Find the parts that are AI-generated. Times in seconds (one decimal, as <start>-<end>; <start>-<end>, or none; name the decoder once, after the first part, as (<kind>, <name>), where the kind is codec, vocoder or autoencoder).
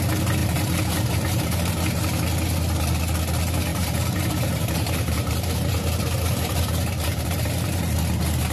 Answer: 0.4-1.7 (vocoder, BigVGAN v2); 3.7-8.0